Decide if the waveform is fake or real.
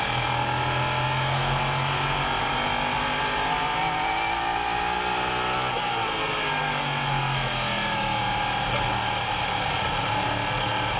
real